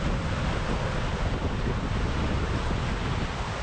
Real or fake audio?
real